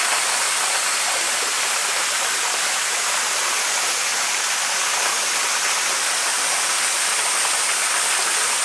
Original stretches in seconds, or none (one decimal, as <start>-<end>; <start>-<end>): 0.0-4.1; 4.9-8.6